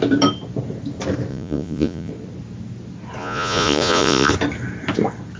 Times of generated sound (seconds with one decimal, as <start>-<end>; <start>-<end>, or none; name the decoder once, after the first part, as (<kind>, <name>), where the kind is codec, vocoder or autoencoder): 1.3-2.1 (vocoder, Vocos); 3.2-4.3